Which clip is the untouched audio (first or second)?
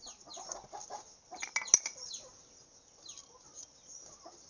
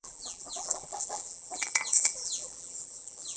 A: first